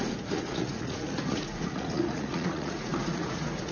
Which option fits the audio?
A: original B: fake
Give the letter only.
B